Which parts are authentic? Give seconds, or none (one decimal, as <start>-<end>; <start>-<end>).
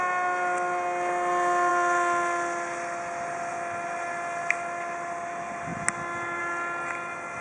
0.0-7.4